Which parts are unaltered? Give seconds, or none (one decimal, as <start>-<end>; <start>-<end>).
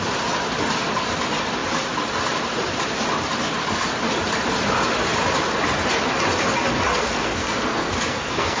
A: 0.0-6.9